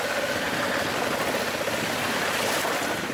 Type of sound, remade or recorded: recorded